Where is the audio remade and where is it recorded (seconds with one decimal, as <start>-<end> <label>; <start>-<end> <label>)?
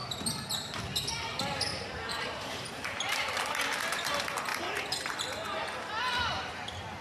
0.0-0.8 remade; 0.8-1.7 recorded; 1.7-3.2 remade; 3.2-7.0 recorded